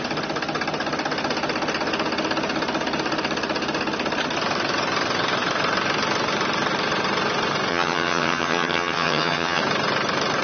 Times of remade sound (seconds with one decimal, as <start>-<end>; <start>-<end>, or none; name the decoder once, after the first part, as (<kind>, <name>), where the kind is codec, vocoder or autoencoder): 7.7-9.6 (vocoder, HiFi-GAN)